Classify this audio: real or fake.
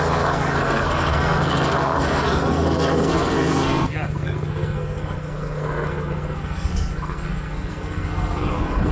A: fake